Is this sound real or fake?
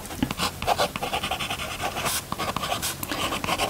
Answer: real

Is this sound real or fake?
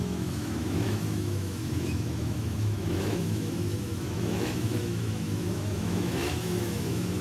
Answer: fake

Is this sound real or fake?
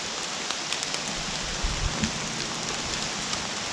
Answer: real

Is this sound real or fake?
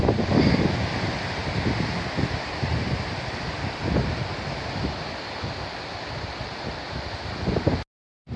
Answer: real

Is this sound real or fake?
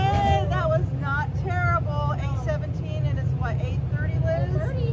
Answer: real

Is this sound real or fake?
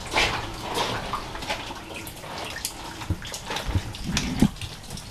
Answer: real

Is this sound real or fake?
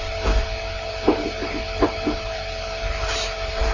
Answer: fake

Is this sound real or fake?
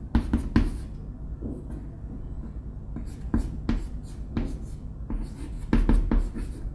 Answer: real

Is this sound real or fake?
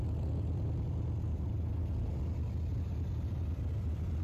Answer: real